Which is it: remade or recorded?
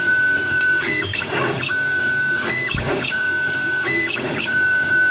remade